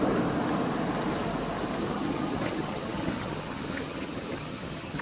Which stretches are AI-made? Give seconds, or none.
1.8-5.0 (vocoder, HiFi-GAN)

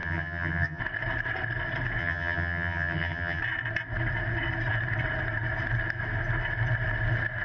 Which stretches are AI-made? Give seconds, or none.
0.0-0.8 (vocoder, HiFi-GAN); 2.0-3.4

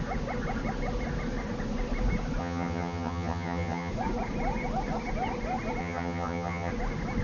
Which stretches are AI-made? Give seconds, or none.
2.4-3.9 (vocoder, HiFi-GAN); 5.8-6.7

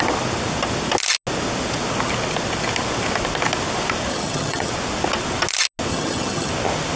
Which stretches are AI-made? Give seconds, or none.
4.1-4.7 (vocoder, HiFi-GAN); 5.9-6.5

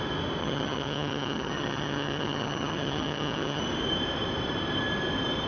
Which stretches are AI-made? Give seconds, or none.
0.4-3.6 (vocoder, HiFi-GAN)